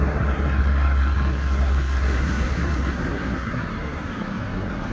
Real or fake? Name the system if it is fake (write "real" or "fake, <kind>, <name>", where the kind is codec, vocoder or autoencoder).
fake, codec, SNAC